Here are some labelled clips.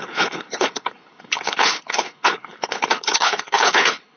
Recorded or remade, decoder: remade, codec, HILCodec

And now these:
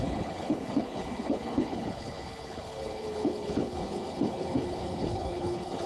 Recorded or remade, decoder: remade, codec, HILCodec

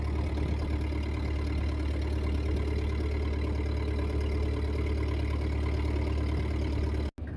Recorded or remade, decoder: recorded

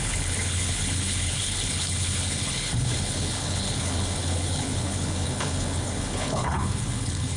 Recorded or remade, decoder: remade, codec, HILCodec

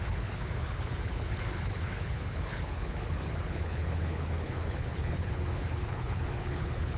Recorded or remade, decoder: remade, codec, HILCodec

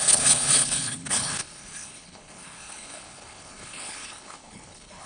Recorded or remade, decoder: remade, codec, HILCodec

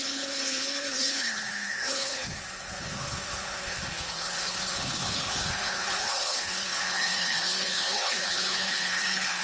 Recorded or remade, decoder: remade, codec, HILCodec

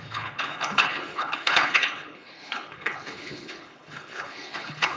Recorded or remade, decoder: remade, codec, HILCodec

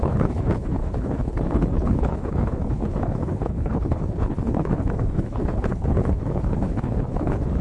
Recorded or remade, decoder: remade, codec, HILCodec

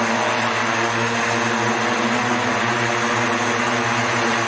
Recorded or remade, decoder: recorded